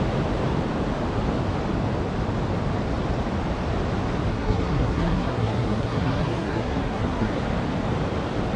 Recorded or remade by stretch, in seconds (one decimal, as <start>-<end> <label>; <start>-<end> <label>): 0.0-4.3 recorded; 4.3-7.3 remade; 7.3-8.6 recorded